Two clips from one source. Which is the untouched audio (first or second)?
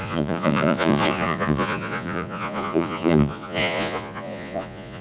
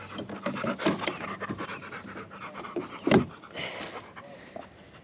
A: second